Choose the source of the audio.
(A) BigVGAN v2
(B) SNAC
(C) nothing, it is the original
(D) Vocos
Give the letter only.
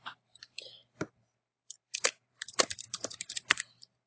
A